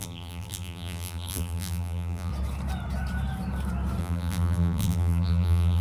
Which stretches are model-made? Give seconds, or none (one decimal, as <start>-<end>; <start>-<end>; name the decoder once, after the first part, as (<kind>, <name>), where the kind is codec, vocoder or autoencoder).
0.0-2.3 (vocoder, BigVGAN v2); 4.0-5.8